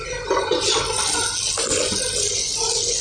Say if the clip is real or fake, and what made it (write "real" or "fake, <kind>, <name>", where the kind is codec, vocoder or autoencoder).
real